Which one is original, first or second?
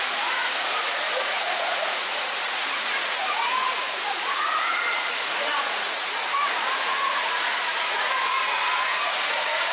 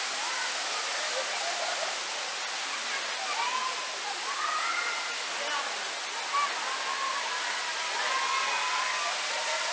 second